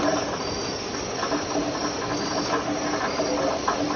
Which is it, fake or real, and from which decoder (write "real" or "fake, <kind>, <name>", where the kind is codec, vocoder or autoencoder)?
real